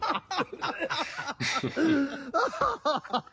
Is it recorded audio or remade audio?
recorded